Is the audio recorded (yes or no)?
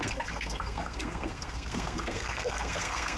no